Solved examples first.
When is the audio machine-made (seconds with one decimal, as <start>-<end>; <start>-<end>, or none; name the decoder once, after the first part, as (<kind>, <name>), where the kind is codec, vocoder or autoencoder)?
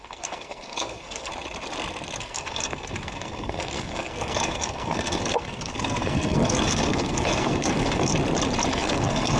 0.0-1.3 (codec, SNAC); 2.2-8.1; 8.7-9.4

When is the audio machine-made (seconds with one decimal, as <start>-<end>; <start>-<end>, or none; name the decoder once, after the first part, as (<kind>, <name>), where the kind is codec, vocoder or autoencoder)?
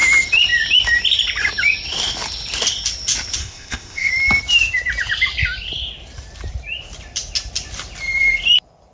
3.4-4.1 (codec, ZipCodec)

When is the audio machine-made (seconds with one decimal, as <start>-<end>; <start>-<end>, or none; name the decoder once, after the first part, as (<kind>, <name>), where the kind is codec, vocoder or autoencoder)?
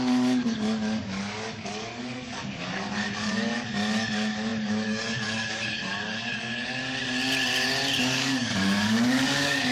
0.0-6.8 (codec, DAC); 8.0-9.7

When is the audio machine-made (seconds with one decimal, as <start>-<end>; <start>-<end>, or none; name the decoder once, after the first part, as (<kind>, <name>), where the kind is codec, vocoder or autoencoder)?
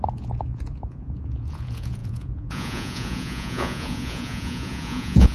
0.0-5.3 (vocoder, Vocos)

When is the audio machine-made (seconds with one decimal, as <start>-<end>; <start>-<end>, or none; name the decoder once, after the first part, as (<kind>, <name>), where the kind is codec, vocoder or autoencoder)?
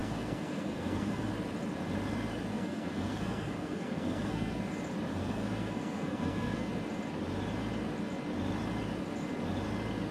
0.0-1.3 (codec, SNAC); 2.5-4.6; 5.1-6.7